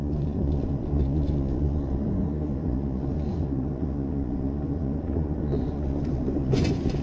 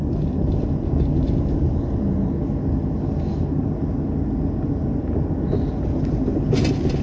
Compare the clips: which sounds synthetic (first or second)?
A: first